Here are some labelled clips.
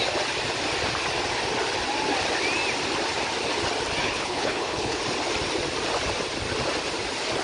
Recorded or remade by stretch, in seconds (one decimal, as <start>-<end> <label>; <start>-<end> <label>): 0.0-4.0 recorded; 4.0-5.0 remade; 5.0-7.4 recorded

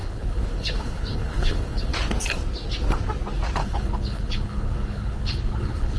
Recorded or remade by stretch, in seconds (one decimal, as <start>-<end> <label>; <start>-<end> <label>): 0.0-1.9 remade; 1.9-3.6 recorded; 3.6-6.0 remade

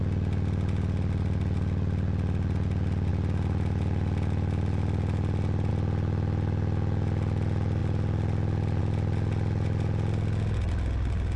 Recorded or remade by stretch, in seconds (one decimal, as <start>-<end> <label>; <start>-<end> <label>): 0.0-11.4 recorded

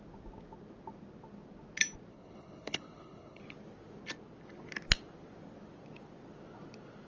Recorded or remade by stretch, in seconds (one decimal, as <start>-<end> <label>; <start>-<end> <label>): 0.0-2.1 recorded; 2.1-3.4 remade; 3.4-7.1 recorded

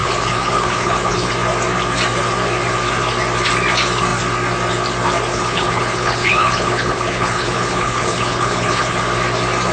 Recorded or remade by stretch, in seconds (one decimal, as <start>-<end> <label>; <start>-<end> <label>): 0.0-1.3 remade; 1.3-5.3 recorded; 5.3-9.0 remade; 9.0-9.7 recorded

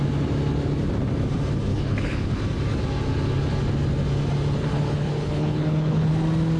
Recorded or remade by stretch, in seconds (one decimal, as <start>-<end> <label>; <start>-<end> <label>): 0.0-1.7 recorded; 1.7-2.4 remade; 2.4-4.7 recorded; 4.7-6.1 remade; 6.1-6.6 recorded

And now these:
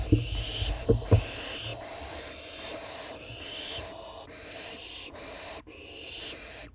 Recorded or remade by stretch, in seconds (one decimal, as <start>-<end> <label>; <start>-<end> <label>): 0.0-6.7 recorded